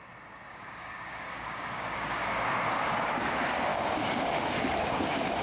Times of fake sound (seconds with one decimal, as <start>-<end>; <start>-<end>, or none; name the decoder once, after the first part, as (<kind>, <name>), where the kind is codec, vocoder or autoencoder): 0.5-2.6 (codec, DAC); 3.7-4.5